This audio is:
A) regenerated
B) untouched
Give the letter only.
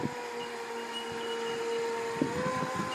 B